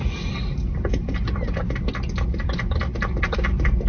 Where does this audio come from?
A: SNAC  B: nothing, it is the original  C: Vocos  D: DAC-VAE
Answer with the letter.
B